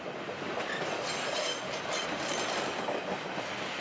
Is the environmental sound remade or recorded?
recorded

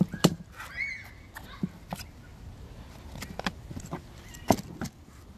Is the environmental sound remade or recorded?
recorded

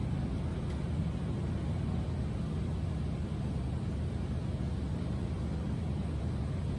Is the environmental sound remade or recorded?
recorded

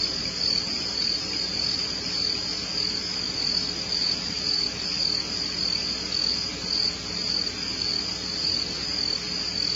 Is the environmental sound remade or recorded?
recorded